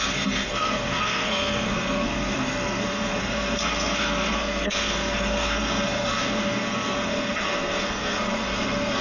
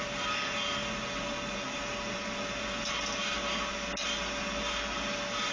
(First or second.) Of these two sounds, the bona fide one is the second